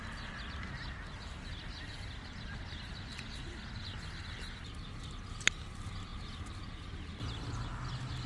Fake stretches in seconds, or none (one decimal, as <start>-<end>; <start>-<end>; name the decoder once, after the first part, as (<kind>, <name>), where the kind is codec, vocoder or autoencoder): 6.1-6.8 (vocoder, BigVGAN v2)